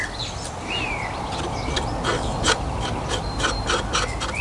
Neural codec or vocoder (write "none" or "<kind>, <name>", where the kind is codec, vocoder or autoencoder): none